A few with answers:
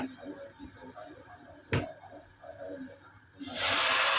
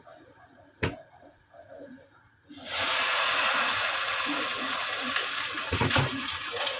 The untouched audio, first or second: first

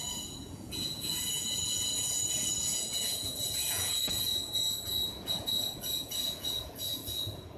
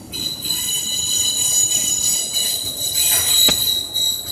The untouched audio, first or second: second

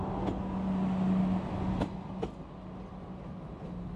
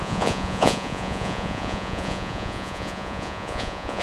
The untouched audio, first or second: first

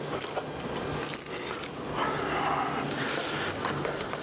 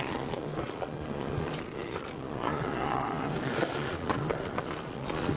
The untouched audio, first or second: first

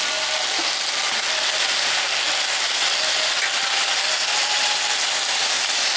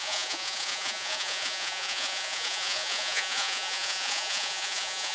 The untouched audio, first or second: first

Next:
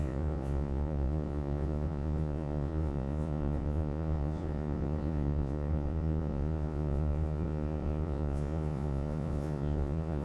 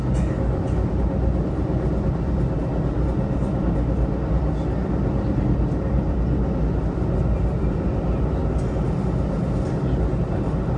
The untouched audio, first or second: second